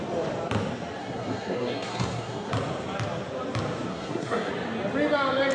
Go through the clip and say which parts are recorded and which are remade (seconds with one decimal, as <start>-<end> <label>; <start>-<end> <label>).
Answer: 0.0-1.0 recorded; 1.0-2.5 remade; 2.5-3.9 recorded; 3.9-4.5 remade; 4.5-5.5 recorded